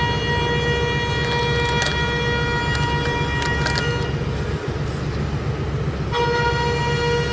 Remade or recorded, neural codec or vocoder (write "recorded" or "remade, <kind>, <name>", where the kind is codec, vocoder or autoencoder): recorded